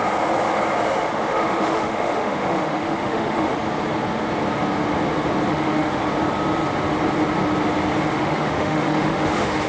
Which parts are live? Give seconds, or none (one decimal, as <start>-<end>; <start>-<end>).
0.0-1.0; 3.5-5.5; 6.0-8.1